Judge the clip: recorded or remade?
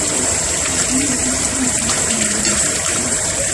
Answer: remade